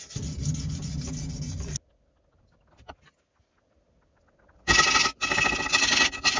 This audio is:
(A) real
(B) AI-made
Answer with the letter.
A